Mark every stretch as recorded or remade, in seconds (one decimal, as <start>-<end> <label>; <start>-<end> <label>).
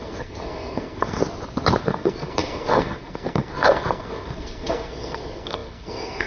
0.0-1.2 remade; 1.2-1.8 recorded; 1.8-6.3 remade